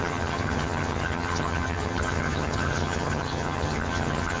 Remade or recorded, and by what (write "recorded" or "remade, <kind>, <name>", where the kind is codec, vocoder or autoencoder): remade, vocoder, HiFi-GAN